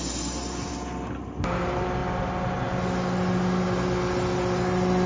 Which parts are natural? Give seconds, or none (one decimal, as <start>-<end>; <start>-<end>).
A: 0.0-5.1